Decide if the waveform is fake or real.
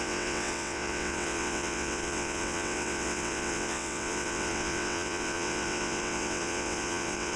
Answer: fake